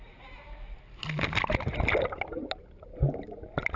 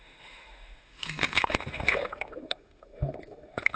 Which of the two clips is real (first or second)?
first